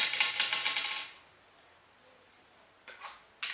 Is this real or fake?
real